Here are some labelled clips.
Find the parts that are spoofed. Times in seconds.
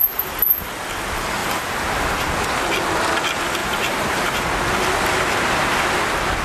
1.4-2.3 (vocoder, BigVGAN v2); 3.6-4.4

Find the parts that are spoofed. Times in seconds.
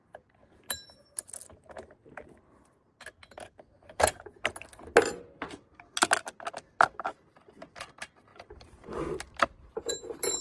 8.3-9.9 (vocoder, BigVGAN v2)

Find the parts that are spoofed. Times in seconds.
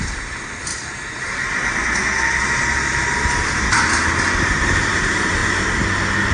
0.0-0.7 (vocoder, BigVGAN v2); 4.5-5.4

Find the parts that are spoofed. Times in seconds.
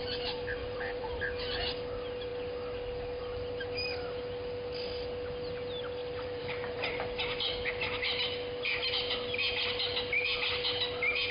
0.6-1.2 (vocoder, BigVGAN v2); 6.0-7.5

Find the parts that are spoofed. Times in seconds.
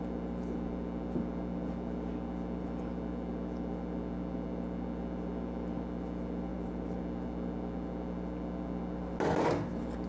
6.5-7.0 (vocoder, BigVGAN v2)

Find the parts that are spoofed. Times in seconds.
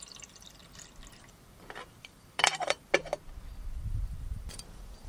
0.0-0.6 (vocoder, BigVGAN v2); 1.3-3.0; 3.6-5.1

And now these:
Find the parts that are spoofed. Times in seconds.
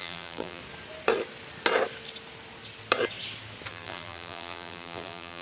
0.0-0.6 (vocoder, BigVGAN v2); 3.7-5.4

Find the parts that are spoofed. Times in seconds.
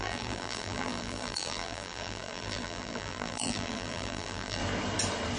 0.0-4.6 (vocoder, BigVGAN v2)